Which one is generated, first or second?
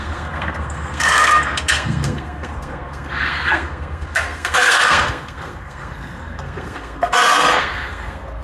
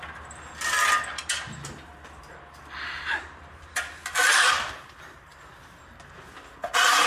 first